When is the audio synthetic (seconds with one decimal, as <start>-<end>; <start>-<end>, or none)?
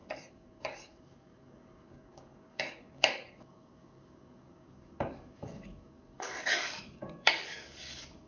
0.0-8.3